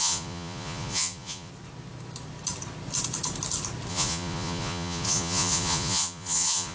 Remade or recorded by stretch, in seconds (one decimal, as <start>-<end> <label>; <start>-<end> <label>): 0.0-1.5 remade; 1.5-3.9 recorded; 3.9-6.7 remade